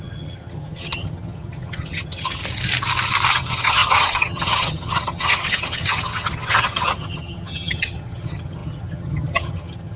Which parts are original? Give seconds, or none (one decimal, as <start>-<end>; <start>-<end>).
2.4-3.3